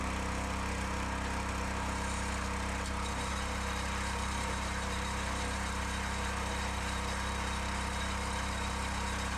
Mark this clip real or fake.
fake